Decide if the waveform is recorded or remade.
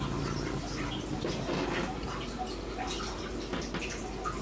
recorded